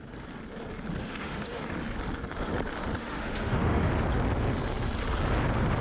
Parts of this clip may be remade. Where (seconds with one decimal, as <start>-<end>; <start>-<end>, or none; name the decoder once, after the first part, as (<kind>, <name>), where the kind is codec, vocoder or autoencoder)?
1.0-1.6 (autoencoder, DAC-VAE); 3.0-3.9